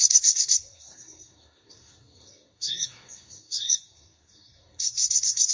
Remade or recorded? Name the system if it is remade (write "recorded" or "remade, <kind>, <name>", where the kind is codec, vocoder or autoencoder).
remade, codec, SNAC